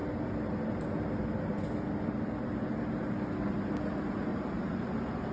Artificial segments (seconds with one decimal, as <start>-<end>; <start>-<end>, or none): 4.3-5.3